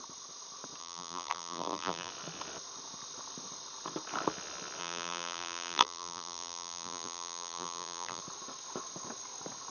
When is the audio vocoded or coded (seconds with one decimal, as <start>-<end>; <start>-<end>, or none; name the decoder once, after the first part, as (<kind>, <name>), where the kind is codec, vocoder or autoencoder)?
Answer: 0.8-2.1 (vocoder, BigVGAN v2); 4.8-8.2